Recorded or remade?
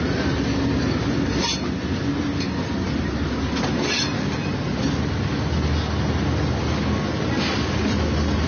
recorded